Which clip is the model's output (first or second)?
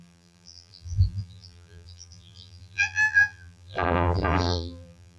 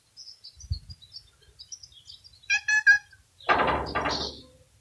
first